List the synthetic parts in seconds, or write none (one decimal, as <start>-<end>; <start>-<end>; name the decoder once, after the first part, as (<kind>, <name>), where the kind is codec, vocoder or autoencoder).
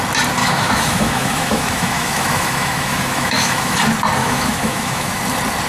0.4-3.8 (autoencoder, DAC-VAE); 4.2-5.2